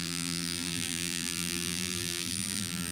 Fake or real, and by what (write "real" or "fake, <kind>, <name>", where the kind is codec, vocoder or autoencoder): fake, vocoder, BigVGAN v2